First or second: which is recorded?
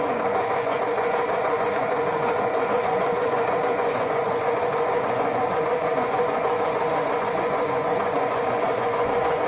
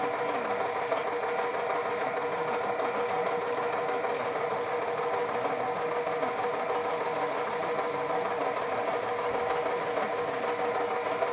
second